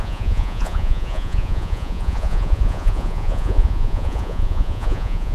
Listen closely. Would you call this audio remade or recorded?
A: remade